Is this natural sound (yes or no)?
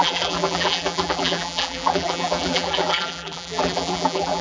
no